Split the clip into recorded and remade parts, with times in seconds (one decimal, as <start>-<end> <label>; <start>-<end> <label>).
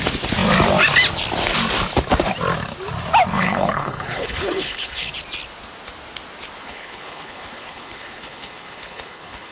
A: 0.0-3.3 recorded; 3.3-5.1 remade; 5.1-6.6 recorded; 6.6-9.5 remade